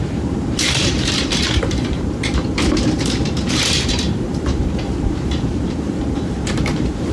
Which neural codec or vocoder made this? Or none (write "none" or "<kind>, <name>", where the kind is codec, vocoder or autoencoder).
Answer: vocoder, BigVGAN v2